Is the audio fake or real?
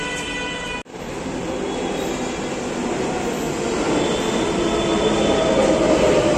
real